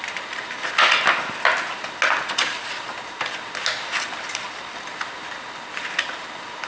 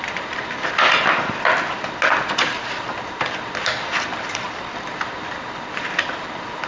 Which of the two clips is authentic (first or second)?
first